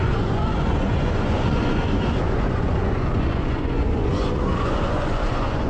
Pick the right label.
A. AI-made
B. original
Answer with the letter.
A